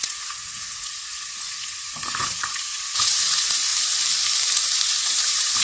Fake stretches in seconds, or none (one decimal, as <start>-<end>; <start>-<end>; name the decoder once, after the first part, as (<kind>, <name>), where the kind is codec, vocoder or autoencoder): 0.0-3.7 (vocoder, Vocos); 4.8-5.6